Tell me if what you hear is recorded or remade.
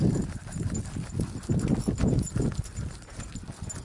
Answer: recorded